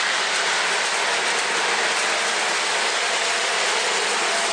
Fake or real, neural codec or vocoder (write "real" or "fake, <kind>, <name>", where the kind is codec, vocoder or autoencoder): real